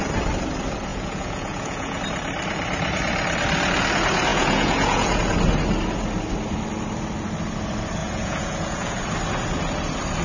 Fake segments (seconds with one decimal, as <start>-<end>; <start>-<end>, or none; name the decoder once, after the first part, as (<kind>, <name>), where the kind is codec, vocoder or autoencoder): 0.9-2.0 (vocoder, Vocos); 4.3-5.2; 8.0-9.0